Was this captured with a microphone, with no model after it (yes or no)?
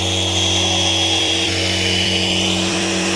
no